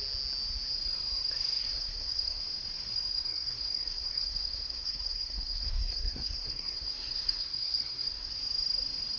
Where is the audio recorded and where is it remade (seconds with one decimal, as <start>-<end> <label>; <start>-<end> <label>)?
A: 0.0-1.6 recorded; 1.6-2.4 remade; 2.4-3.1 recorded; 3.1-8.3 remade; 8.3-9.2 recorded